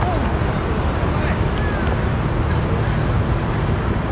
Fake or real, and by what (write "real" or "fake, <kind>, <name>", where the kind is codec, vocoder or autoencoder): real